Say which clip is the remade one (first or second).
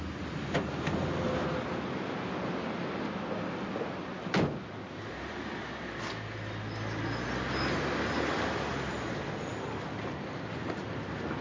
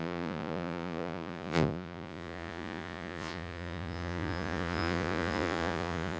second